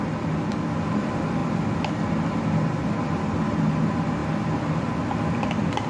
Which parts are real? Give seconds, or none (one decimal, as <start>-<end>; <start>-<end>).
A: 0.0-5.9